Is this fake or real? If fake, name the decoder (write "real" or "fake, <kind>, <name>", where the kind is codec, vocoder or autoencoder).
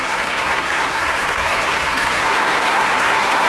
fake, codec, SNAC